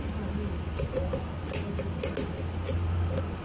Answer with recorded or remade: recorded